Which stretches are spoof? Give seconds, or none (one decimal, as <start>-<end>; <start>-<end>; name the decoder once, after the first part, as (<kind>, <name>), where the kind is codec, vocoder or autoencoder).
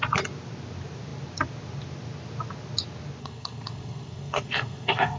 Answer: 3.2-5.2 (codec, SNAC)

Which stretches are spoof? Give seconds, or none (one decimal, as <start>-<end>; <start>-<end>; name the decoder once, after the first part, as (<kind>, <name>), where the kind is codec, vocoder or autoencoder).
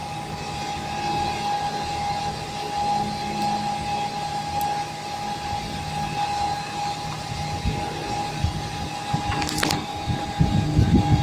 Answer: none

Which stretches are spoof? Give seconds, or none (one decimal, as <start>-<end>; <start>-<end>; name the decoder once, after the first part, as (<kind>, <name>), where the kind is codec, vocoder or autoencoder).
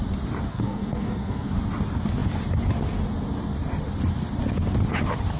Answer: 0.5-1.5 (codec, SNAC)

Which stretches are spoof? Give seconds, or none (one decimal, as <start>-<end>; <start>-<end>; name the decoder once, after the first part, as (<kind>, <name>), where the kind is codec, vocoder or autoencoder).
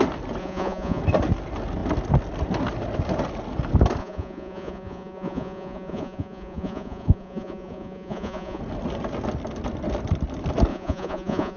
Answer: 0.4-1.0 (vocoder, Vocos); 4.0-8.6; 10.7-11.6